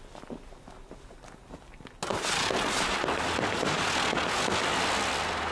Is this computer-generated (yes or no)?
no